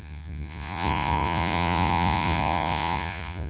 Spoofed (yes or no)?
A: yes